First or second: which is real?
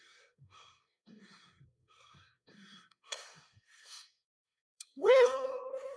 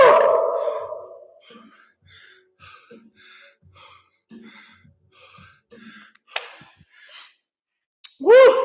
second